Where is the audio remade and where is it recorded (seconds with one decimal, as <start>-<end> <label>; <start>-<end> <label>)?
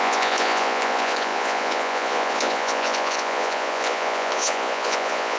0.0-5.4 remade